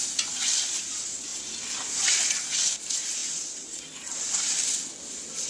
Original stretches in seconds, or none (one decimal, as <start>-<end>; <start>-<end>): 0.0-5.5